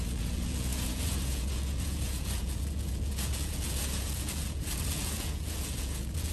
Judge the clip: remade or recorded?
remade